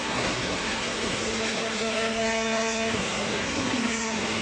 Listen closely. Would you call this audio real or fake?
fake